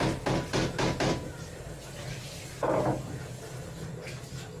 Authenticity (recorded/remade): recorded